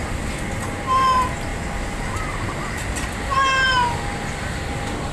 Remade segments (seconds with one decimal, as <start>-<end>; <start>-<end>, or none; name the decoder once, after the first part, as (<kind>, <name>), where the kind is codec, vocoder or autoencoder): none